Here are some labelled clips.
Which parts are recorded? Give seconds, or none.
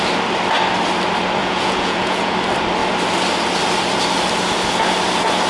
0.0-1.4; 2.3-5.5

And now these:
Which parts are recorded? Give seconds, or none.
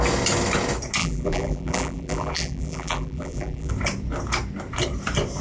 0.0-1.0; 3.7-5.4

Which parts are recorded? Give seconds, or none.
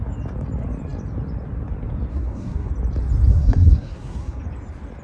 0.0-2.1; 2.7-3.3; 4.4-5.0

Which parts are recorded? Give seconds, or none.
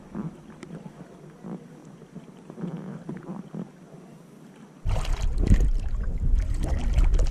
0.0-1.8; 3.2-5.7; 6.7-7.3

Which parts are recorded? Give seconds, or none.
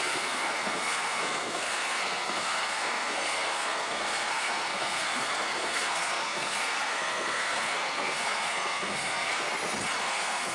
9.5-10.0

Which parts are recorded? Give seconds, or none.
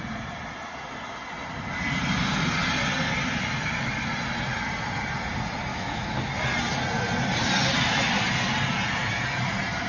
0.0-5.7; 6.3-9.9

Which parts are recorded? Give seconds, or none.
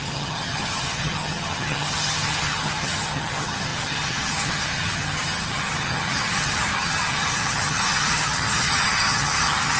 none